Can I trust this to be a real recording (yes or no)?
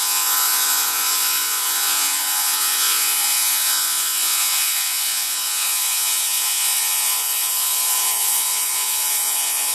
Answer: no